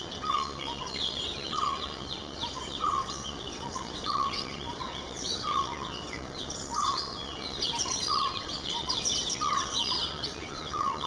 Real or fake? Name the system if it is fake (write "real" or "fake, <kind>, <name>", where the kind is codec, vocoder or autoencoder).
fake, vocoder, WaveNeXt